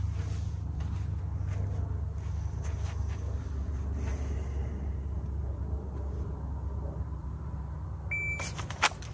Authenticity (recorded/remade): recorded